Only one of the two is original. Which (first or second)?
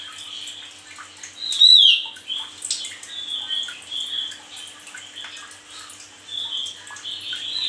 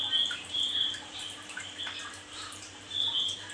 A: first